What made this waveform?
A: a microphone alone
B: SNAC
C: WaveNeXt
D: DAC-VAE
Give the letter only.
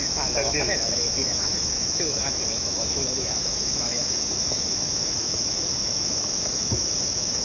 D